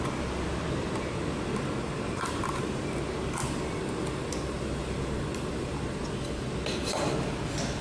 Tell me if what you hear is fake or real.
real